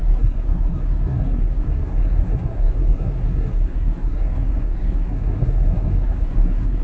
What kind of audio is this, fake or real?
fake